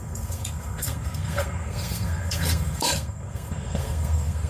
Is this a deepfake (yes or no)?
yes